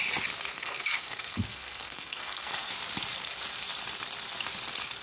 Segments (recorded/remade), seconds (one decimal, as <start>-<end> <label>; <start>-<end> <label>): 0.0-0.5 recorded; 0.5-2.7 remade; 2.7-5.0 recorded